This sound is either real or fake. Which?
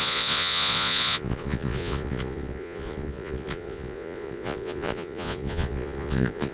fake